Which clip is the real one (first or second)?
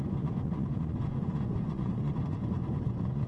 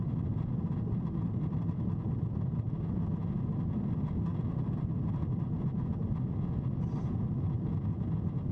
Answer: second